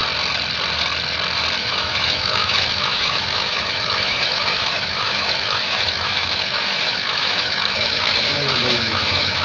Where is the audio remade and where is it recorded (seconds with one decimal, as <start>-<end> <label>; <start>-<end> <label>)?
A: 0.0-1.6 recorded; 1.6-9.4 remade